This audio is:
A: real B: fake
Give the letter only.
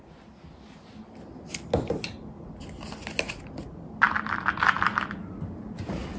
A